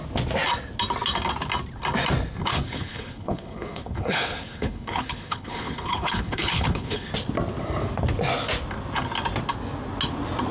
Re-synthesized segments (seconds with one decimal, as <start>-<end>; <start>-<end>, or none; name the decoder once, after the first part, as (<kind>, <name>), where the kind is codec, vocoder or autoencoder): 2.5-7.1 (codec, HILCodec)